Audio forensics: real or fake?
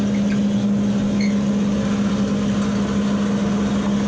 real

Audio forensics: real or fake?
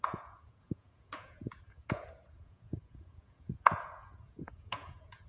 fake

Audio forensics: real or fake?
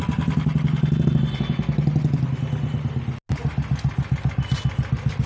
real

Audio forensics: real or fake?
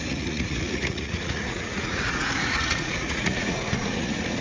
fake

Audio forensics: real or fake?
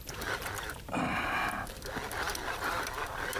real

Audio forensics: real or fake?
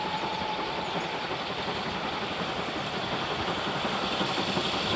real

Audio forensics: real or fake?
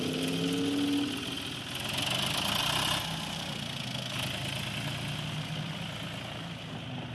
real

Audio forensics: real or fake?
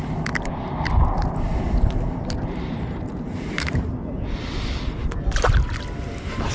real